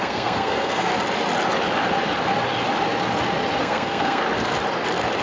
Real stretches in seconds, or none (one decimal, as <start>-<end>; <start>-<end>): 0.9-3.6; 4.2-5.2